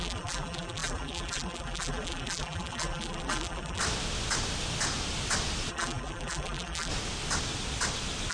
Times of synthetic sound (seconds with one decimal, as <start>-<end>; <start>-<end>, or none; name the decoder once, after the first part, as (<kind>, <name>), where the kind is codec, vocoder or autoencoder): 0.0-3.8 (vocoder, BigVGAN v2); 5.7-6.9